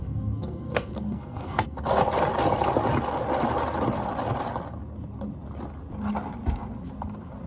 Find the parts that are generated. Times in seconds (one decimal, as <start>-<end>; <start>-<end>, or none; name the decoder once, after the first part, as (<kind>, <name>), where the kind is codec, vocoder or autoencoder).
0.0-1.8 (codec, SNAC)